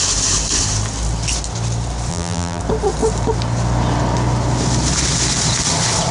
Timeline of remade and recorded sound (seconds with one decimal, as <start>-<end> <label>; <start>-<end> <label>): 0.0-2.1 recorded; 2.1-2.6 remade; 2.6-6.1 recorded